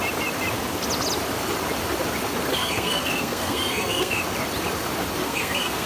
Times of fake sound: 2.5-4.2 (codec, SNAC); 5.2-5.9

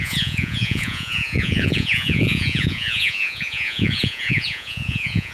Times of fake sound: 0.0-5.3 (vocoder, Vocos)

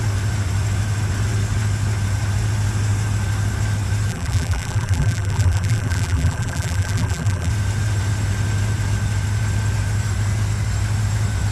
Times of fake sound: 4.1-7.5 (vocoder, BigVGAN v2)

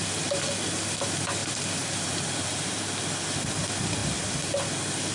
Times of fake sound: 1.4-2.8 (vocoder, BigVGAN v2)

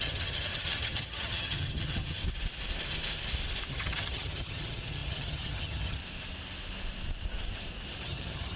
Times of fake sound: 0.0-2.2 (vocoder, HiFi-GAN); 3.7-6.0; 8.0-8.6

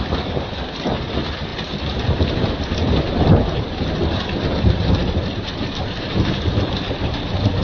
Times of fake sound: 1.5-3.9 (vocoder, BigVGAN v2); 5.0-6.1

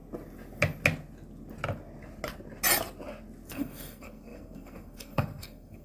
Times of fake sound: 3.5-5.8 (codec, SNAC)